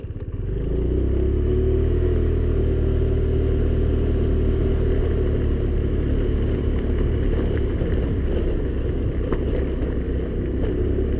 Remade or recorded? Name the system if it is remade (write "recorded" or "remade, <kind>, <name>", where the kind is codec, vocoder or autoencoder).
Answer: recorded